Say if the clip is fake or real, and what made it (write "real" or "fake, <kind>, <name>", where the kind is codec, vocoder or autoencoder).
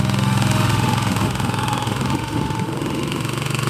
fake, autoencoder, DAC-VAE